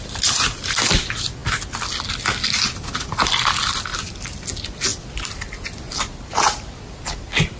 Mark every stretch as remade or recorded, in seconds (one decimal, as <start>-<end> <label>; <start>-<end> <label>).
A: 0.0-7.6 recorded